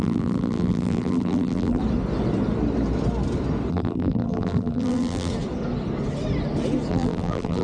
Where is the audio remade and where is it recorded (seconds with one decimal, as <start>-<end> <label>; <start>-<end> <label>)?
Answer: 0.0-1.8 remade; 1.8-3.7 recorded; 3.7-5.3 remade; 5.3-6.9 recorded; 6.9-7.6 remade